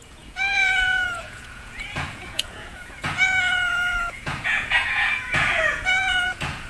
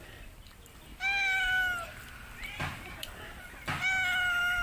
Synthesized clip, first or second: first